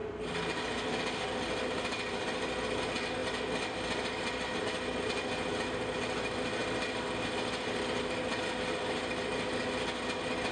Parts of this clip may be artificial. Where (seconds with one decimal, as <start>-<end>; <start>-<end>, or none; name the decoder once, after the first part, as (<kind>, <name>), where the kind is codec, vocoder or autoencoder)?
none

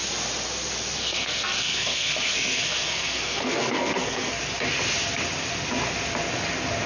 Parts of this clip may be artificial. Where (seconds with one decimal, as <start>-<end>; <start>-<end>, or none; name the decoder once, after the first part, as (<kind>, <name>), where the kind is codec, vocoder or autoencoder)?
1.0-4.4 (codec, SNAC)

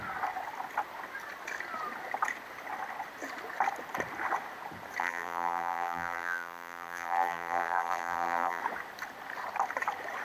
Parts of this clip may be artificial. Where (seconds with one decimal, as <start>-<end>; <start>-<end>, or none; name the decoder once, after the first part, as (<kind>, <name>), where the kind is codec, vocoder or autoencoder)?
5.0-8.6 (vocoder, BigVGAN v2)

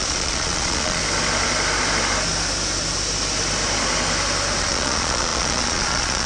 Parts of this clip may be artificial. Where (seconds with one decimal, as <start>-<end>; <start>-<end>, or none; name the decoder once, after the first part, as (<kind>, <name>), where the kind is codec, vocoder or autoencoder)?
0.0-1.0 (vocoder, Vocos); 4.6-6.3

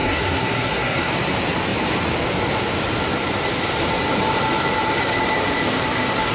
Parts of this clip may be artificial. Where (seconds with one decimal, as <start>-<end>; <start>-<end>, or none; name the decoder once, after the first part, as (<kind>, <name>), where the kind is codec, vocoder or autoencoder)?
0.0-1.1 (codec, SNAC)

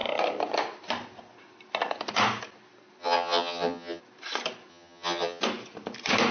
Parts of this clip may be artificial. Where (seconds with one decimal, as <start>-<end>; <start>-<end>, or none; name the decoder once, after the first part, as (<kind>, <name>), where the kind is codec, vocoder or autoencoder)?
3.0-4.0 (vocoder, HiFi-GAN); 4.7-5.4